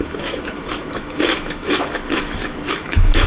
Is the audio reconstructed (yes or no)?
yes